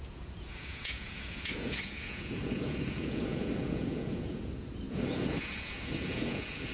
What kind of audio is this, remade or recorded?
remade